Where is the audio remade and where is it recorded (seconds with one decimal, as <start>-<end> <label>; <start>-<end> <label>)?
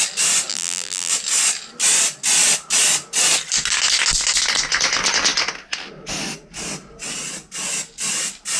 0.0-0.5 recorded; 0.5-1.1 remade; 1.1-8.6 recorded